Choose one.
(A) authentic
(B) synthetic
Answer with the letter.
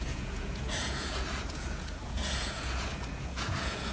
B